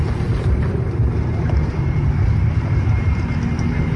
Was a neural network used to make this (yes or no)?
yes